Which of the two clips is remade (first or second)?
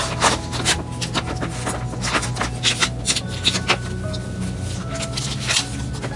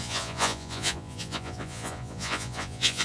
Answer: second